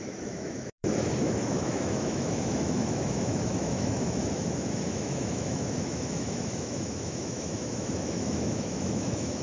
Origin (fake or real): fake